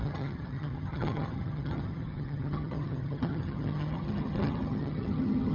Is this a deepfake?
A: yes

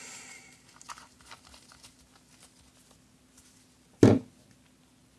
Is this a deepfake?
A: no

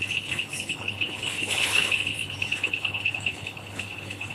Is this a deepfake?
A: yes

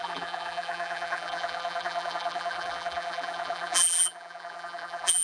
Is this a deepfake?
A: yes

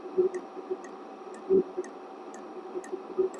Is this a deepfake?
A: yes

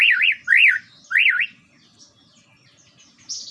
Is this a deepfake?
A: no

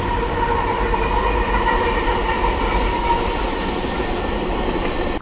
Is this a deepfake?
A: no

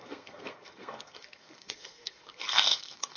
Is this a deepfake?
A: yes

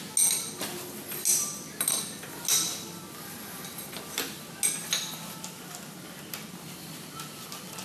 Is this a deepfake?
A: no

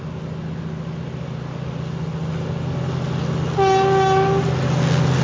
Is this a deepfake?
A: no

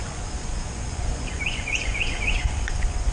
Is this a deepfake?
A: yes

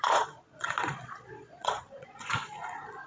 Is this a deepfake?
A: yes